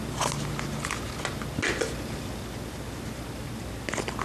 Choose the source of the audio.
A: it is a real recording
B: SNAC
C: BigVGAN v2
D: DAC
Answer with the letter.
A